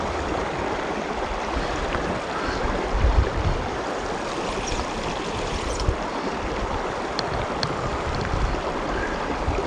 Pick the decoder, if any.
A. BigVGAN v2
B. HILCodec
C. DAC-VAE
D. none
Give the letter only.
D